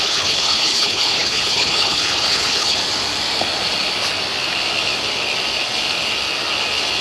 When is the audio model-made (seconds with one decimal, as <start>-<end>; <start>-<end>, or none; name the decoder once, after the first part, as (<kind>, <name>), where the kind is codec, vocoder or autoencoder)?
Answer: 0.0-2.8 (codec, HILCodec)

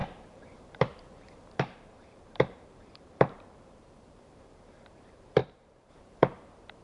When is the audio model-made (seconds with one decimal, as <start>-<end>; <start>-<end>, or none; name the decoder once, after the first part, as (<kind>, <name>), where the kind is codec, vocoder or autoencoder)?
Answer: 0.0-6.8 (vocoder, BigVGAN v2)

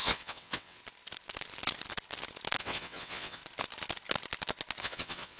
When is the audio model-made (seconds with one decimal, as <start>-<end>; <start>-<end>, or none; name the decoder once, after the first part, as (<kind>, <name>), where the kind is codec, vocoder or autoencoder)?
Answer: 0.0-0.8 (vocoder, WaveNeXt); 2.6-3.4; 4.8-5.4

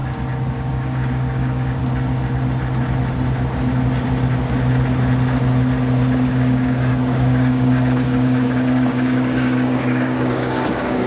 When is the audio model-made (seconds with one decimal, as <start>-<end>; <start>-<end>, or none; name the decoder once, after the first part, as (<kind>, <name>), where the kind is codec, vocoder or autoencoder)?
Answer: 0.7-1.8 (codec, DAC); 6.3-11.1